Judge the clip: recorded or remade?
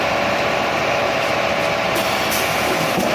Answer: recorded